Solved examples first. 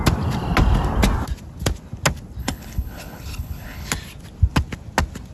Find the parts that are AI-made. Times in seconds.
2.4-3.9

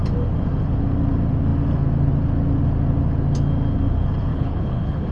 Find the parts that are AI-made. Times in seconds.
4.3-5.1